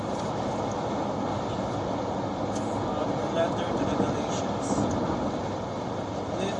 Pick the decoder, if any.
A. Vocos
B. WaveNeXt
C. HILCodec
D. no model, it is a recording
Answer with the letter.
D